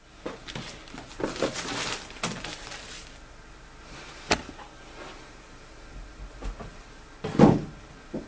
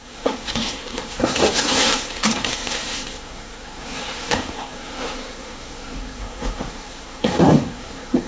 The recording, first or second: first